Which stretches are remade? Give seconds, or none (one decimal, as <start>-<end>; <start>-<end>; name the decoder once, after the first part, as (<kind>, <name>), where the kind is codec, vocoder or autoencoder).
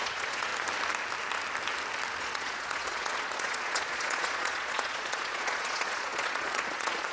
0.0-0.5 (vocoder, Vocos); 2.2-7.1